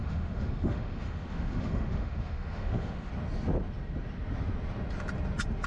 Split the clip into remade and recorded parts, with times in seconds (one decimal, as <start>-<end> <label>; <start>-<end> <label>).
0.0-3.1 remade; 3.1-5.7 recorded